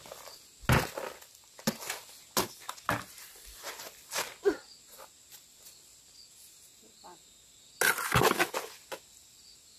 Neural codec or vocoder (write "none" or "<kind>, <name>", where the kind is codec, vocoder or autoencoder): none